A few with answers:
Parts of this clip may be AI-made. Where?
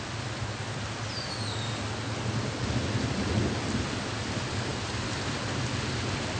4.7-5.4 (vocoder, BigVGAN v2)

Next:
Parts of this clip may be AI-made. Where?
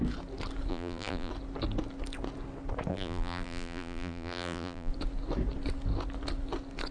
0.7-1.3 (vocoder, BigVGAN v2); 2.9-4.9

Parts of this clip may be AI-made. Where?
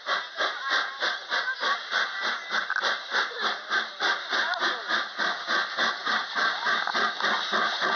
none